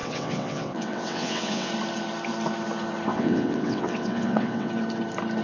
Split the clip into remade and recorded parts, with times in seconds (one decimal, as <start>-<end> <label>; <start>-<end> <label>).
0.0-1.7 remade; 1.7-3.1 recorded; 3.1-4.7 remade; 4.7-5.4 recorded